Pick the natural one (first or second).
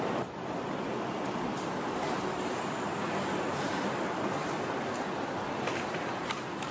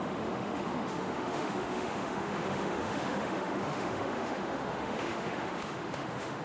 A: first